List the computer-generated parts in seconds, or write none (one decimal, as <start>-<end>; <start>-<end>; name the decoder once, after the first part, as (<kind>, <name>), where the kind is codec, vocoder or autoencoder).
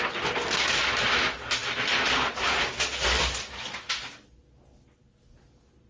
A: none